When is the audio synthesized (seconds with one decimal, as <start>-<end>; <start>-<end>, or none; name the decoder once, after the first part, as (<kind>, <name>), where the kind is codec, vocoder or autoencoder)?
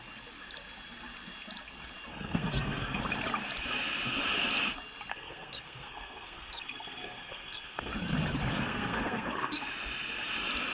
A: 2.1-3.0 (codec, SNAC); 5.1-7.9; 8.5-9.6